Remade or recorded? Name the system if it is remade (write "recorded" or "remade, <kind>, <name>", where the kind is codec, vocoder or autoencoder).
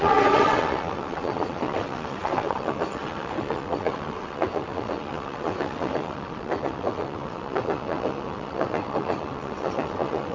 remade, vocoder, WaveNeXt